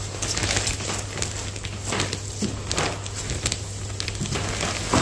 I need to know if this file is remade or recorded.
recorded